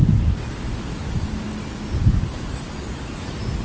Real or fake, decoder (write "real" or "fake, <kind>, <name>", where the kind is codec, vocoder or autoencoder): real